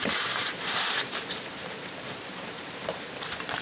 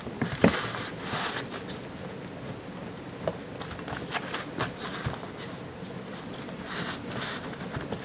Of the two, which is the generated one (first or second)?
first